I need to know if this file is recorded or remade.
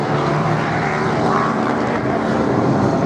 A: remade